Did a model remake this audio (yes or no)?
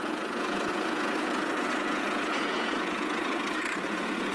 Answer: yes